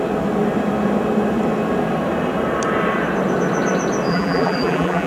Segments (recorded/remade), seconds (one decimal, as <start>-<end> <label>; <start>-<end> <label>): 0.0-4.1 recorded; 4.1-5.1 remade